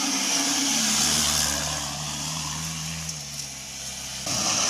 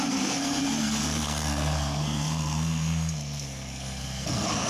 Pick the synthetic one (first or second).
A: second